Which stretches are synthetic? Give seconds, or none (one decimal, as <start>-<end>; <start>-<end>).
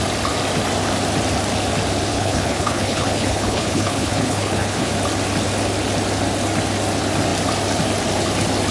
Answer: 2.1-4.9